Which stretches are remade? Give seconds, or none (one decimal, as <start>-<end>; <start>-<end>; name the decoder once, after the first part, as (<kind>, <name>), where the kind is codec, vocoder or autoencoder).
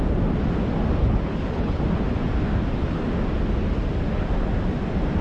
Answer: 1.0-1.8 (codec, HILCodec)